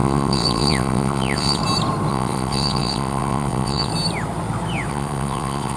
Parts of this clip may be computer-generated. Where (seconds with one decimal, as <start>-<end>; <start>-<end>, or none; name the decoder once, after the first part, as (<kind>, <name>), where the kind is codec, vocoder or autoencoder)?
0.0-1.6 (vocoder, WaveNeXt); 2.1-3.9; 4.9-5.8